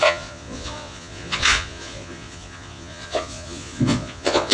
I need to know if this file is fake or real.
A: fake